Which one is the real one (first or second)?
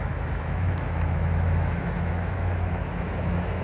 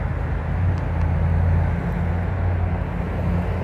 second